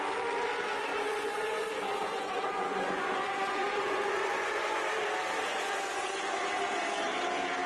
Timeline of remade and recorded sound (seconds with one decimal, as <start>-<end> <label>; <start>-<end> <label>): 0.0-0.9 recorded; 0.9-4.8 remade; 4.8-5.5 recorded; 5.5-6.1 remade; 6.1-7.7 recorded